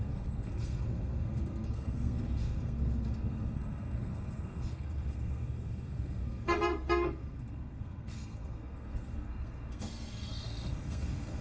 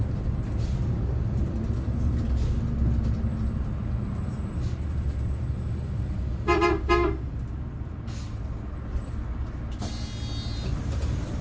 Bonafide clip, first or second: second